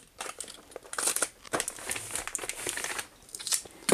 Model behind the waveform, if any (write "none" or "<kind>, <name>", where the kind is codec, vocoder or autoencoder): none